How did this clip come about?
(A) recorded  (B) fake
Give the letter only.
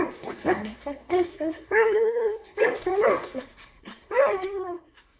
B